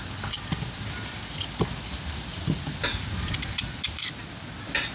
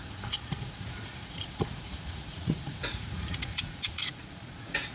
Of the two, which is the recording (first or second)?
first